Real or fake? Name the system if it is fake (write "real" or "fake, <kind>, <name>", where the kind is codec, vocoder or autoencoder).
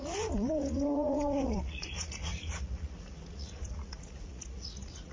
fake, vocoder, Vocos